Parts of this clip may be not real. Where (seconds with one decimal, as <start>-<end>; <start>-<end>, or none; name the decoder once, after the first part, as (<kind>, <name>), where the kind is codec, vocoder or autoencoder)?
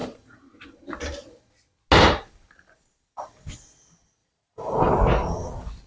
4.2-4.9 (vocoder, BigVGAN v2)